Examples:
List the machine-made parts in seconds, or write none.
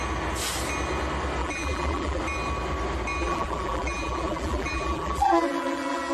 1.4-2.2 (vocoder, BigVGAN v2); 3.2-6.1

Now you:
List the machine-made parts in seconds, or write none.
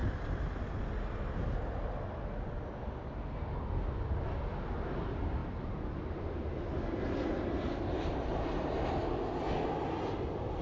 none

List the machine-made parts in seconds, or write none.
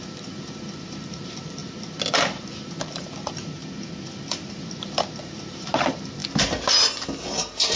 0.0-3.6 (vocoder, BigVGAN v2); 4.5-6.2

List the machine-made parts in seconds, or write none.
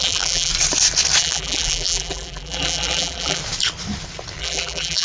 0.0-0.5 (vocoder, BigVGAN v2); 1.2-3.4; 4.4-5.0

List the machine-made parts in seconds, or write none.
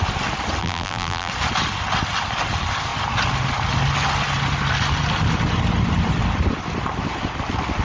0.6-1.3 (vocoder, BigVGAN v2)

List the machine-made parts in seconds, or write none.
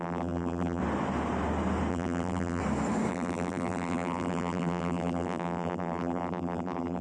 0.0-0.8 (vocoder, BigVGAN v2); 1.9-2.6; 3.1-7.0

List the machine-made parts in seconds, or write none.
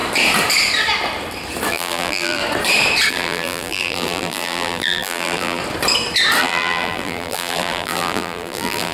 1.7-2.4 (vocoder, BigVGAN v2); 3.1-5.6; 6.4-8.9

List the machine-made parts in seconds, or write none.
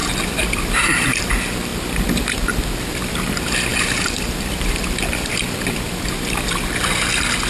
0.0-1.2 (vocoder, BigVGAN v2); 3.7-6.6